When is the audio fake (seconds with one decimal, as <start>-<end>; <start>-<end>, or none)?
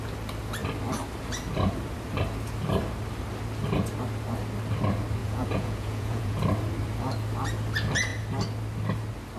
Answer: 5.2-6.4